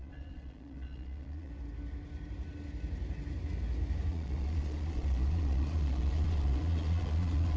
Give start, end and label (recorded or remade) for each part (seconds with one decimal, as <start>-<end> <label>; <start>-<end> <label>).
0.0-1.5 remade; 1.5-4.1 recorded; 4.1-7.6 remade